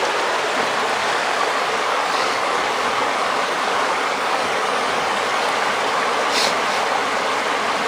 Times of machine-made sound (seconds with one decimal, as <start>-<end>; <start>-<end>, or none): 1.0-5.4